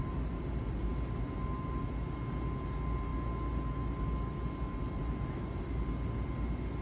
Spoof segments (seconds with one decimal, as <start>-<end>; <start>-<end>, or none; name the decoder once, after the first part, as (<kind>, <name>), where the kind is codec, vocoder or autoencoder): none